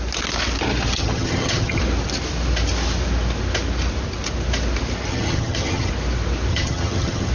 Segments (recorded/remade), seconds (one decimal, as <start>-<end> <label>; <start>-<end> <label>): 0.0-0.9 recorded; 0.9-1.8 remade; 1.8-5.1 recorded; 5.1-5.9 remade; 5.9-6.5 recorded; 6.5-7.3 remade